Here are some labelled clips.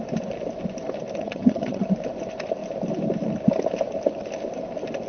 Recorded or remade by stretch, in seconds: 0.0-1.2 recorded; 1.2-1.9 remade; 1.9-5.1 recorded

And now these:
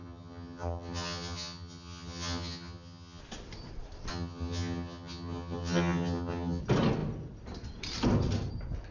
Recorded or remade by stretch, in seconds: 0.0-3.2 remade; 3.2-4.1 recorded; 4.1-6.6 remade; 6.6-8.9 recorded

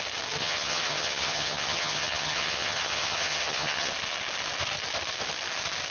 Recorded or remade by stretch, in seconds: 0.0-0.4 recorded; 0.4-3.9 remade; 3.9-5.9 recorded

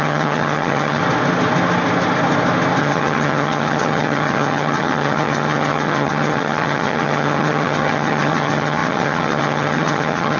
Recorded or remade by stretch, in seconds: 0.0-1.0 remade; 1.0-2.8 recorded; 2.8-10.4 remade

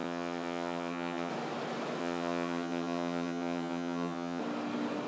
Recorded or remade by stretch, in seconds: 0.0-1.3 remade; 1.3-2.0 recorded; 2.0-4.4 remade; 4.4-5.1 recorded

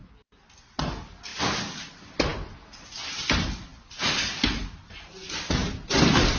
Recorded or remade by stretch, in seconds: 0.0-6.4 recorded